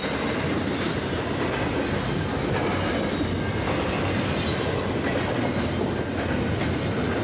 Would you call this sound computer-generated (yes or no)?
no